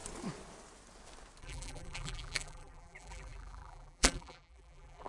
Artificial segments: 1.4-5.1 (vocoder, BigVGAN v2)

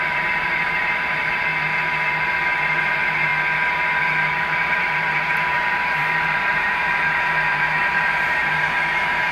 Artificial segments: 0.0-1.5 (vocoder, BigVGAN v2); 2.6-3.3; 4.0-9.3

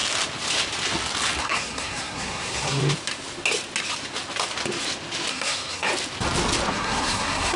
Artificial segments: 1.4-2.8 (codec, SNAC); 5.3-5.9; 6.7-7.6

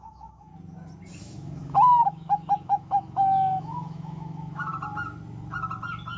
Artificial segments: 0.0-0.5 (autoencoder, DAC-VAE); 1.2-4.7

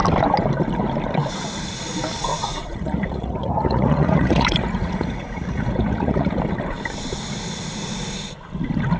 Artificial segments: 2.3-6.4 (vocoder, Vocos)